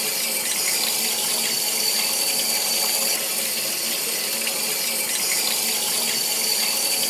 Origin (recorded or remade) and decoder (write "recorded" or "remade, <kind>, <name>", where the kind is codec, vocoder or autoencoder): recorded